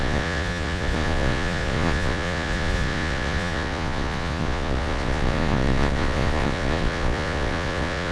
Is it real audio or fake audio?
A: fake